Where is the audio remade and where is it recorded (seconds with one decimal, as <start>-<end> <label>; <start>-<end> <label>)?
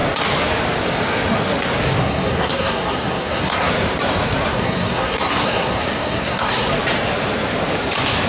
0.0-2.0 recorded; 2.0-3.7 remade; 3.7-4.5 recorded; 4.5-6.7 remade; 6.7-8.3 recorded